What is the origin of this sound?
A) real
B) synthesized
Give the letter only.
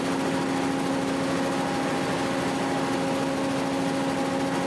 A